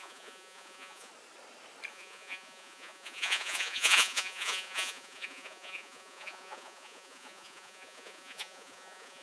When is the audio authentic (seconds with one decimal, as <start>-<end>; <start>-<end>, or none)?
1.1-1.9